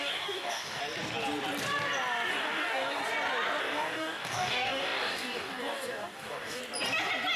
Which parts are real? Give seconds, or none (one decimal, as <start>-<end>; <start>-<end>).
0.8-2.3; 3.0-3.6; 6.6-7.4